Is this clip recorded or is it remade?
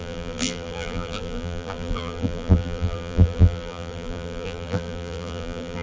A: remade